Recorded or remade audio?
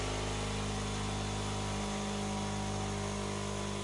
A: recorded